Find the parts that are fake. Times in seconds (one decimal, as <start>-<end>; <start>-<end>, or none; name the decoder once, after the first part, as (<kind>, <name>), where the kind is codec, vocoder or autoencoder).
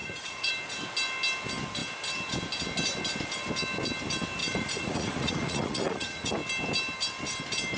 0.0-0.5 (vocoder, Vocos); 4.4-6.3